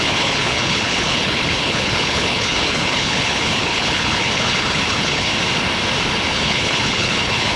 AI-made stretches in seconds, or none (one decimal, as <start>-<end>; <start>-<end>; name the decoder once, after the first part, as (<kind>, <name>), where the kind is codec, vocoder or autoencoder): 0.0-5.3 (codec, HILCodec); 6.3-7.6